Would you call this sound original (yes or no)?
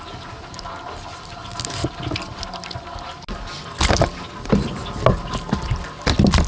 yes